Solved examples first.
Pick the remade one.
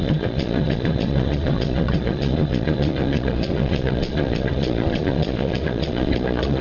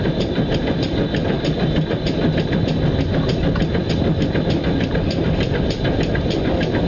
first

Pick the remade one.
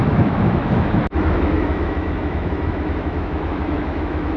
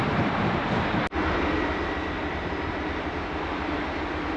first